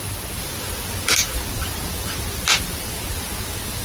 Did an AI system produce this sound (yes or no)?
no